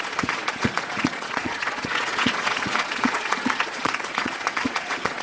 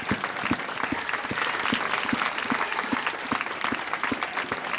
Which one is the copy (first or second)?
first